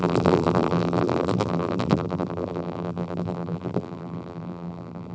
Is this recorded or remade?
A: remade